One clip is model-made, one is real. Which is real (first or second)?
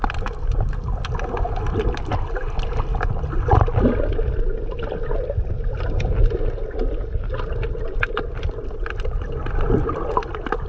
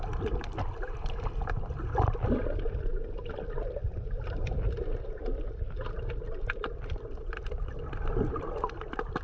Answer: first